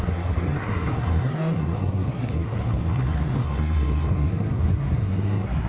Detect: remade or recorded remade